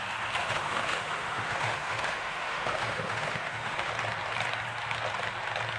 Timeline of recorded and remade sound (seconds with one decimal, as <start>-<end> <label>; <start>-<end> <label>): 0.0-0.4 recorded; 0.4-3.9 remade; 3.9-5.8 recorded